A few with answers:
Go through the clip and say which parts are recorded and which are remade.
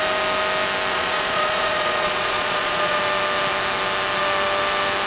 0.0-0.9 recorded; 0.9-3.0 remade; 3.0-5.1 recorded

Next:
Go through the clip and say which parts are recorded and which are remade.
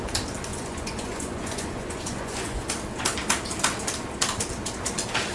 0.0-0.5 recorded; 0.5-2.7 remade; 2.7-5.3 recorded